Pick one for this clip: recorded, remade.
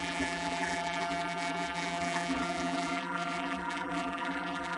remade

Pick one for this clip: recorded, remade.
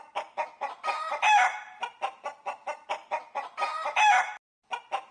recorded